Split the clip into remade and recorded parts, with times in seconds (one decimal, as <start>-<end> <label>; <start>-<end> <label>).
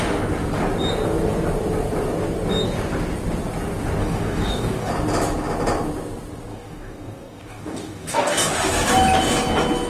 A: 0.0-4.0 recorded; 4.0-4.9 remade; 4.9-6.5 recorded; 6.5-8.5 remade; 8.5-9.9 recorded